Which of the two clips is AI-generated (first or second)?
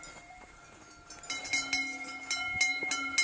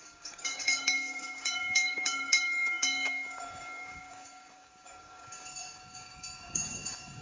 second